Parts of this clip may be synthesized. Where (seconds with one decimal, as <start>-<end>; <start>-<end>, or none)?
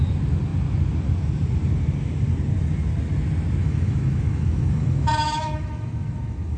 3.6-6.6